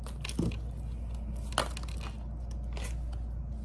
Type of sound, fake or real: real